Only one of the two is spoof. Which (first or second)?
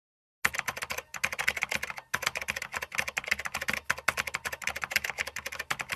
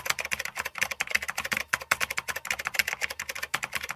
second